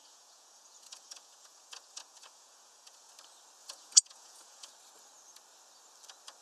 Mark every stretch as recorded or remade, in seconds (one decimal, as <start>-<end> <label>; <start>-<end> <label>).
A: 0.0-3.1 remade; 3.1-3.6 recorded; 3.6-4.7 remade; 4.7-6.4 recorded